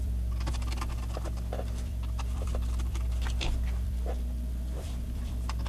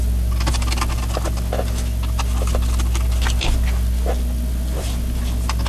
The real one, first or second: second